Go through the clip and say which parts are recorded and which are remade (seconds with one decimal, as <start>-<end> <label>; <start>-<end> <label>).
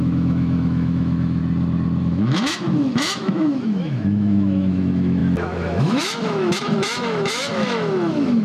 0.0-1.4 remade; 1.4-2.0 recorded; 2.0-8.4 remade